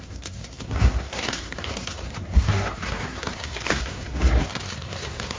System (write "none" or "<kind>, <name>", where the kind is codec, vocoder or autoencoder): codec, SNAC